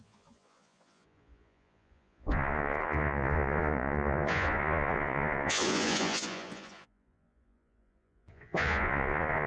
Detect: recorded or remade remade